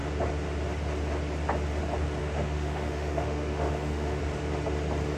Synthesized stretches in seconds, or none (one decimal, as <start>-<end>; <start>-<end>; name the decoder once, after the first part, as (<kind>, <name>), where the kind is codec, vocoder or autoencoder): 2.2-4.2 (autoencoder, DAC-VAE)